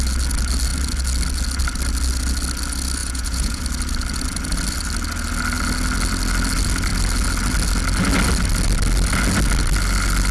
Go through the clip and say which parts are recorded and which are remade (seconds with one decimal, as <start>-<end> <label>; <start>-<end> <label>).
0.0-3.0 recorded; 3.0-3.6 remade; 3.6-10.3 recorded